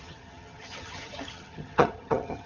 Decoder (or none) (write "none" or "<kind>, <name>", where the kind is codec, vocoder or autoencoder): vocoder, HiFi-GAN